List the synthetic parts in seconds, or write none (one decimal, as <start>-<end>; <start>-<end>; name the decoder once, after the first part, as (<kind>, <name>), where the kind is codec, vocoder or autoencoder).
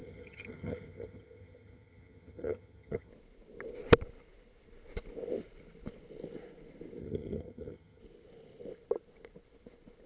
0.0-3.1 (vocoder, HiFi-GAN); 7.0-8.0